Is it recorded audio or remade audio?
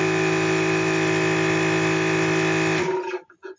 recorded